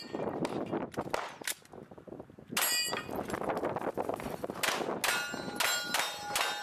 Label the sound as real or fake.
real